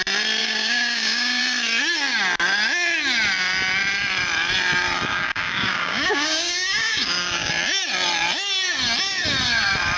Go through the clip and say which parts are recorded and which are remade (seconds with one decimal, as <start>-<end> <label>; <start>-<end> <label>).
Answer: 0.0-0.4 recorded; 0.4-1.4 remade; 1.4-5.1 recorded; 5.1-7.5 remade; 7.5-10.0 recorded